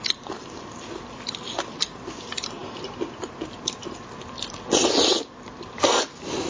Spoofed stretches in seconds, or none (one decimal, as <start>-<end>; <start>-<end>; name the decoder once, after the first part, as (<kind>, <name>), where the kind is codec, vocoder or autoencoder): 0.0-6.5 (vocoder, BigVGAN v2)

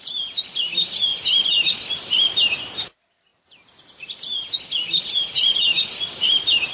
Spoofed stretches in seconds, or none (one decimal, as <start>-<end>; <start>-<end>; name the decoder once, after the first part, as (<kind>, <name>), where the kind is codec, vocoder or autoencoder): 0.0-1.1 (vocoder, BigVGAN v2); 2.6-6.7